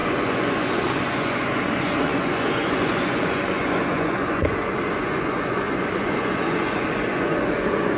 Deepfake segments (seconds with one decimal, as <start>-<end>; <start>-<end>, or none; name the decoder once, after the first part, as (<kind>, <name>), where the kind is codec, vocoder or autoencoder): 0.0-8.0 (vocoder, Vocos)